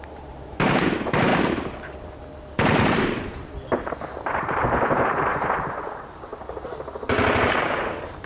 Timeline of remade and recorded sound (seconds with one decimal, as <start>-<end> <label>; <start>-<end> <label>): 0.0-1.3 remade; 1.3-2.9 recorded; 2.9-3.4 remade; 3.4-4.4 recorded; 4.4-5.3 remade; 5.3-5.8 recorded; 5.8-8.3 remade